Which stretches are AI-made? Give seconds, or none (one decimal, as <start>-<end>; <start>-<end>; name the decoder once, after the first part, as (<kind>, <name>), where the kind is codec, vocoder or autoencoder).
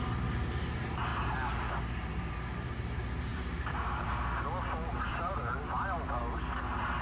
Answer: 1.1-1.7 (vocoder, BigVGAN v2); 3.3-4.1; 5.1-6.2